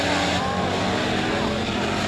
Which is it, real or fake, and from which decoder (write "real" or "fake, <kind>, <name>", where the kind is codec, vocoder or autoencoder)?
real